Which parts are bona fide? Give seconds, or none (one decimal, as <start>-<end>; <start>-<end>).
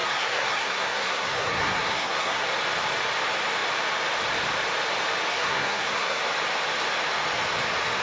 2.5-5.3; 6.2-8.0